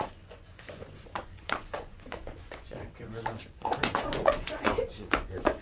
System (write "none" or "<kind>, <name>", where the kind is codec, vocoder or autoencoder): vocoder, Vocos